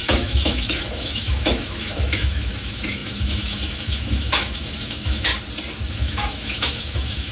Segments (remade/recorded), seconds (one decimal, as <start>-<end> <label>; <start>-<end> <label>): 0.0-5.3 remade; 5.3-5.9 recorded; 5.9-7.3 remade